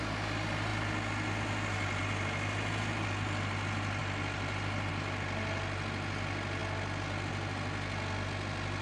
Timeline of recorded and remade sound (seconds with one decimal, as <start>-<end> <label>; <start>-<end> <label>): 0.0-8.8 recorded